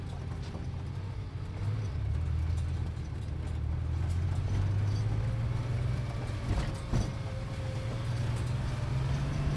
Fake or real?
real